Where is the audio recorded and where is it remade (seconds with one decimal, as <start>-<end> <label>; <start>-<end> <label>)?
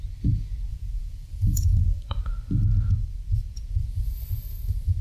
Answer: 0.0-0.7 recorded; 0.7-2.0 remade; 2.0-5.0 recorded